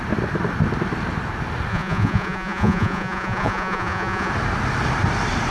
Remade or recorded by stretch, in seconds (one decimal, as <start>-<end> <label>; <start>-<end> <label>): 0.0-1.7 recorded; 1.7-4.3 remade; 4.3-5.5 recorded